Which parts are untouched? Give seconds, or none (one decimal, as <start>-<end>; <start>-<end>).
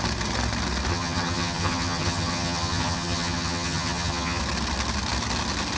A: 0.0-0.9; 4.4-5.8